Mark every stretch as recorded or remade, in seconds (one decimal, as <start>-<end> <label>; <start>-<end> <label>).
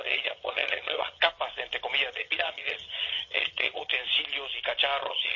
0.0-1.2 remade; 1.2-2.1 recorded; 2.1-3.9 remade; 3.9-5.0 recorded; 5.0-5.4 remade